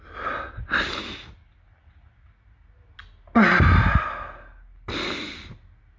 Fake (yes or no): no